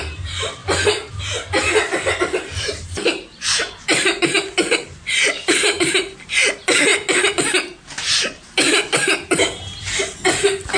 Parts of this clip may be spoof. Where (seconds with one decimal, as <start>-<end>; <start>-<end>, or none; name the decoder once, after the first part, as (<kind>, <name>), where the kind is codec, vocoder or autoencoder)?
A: 0.0-6.9 (vocoder, BigVGAN v2); 7.5-10.8